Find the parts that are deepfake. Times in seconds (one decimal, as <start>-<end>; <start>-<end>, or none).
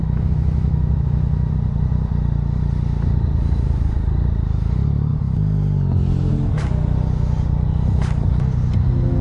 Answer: 0.0-1.5